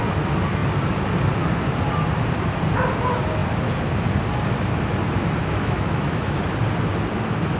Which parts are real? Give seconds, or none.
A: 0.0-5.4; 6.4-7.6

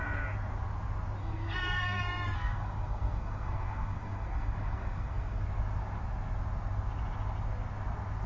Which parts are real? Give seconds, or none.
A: 0.0-1.2; 5.4-8.3

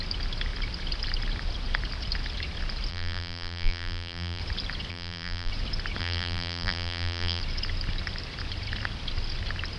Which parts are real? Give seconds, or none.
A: 0.0-2.9; 4.4-4.9; 5.5-6.0; 7.4-9.8

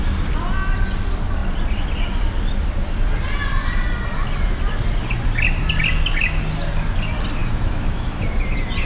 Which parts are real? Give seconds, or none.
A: 0.0-7.4; 8.2-8.9

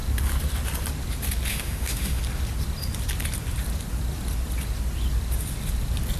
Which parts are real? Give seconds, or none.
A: 0.0-1.5; 2.2-6.2

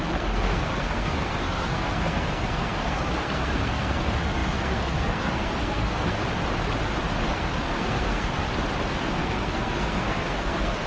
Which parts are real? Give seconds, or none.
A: 6.2-7.3; 8.4-8.9